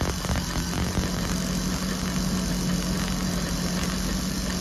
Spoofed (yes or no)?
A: no